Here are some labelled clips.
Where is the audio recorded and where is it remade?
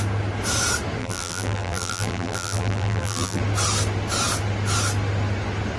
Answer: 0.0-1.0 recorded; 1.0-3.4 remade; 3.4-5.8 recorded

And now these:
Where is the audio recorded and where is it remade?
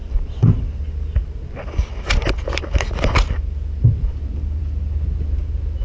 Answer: 0.0-5.8 recorded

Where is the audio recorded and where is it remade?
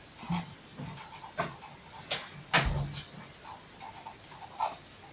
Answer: 0.0-5.1 recorded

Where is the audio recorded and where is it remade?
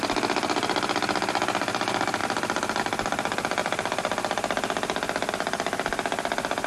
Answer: 0.0-6.7 recorded